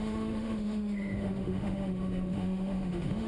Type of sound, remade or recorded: remade